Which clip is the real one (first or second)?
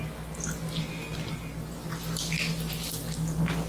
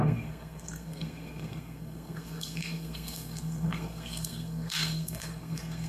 first